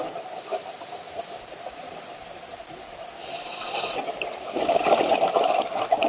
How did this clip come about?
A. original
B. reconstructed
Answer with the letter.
A